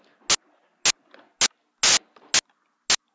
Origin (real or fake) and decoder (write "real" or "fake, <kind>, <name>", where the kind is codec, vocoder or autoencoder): real